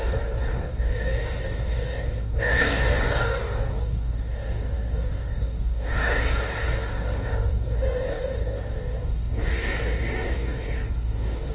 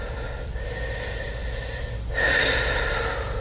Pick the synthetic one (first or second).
first